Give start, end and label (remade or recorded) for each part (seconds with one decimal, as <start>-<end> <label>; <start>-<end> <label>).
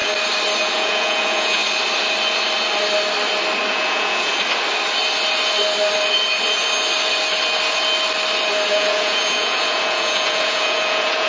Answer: 0.0-0.6 recorded; 0.6-1.6 remade; 1.6-3.7 recorded; 3.7-4.3 remade; 4.3-8.7 recorded; 8.7-11.3 remade